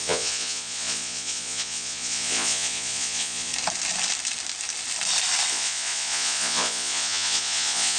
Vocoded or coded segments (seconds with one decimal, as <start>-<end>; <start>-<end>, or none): 0.0-3.5; 5.5-8.0